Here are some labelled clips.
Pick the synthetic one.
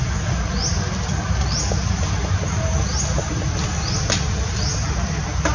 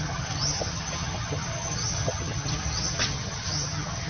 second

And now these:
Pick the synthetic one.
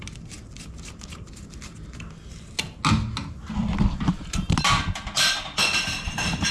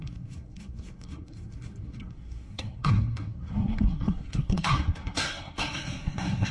second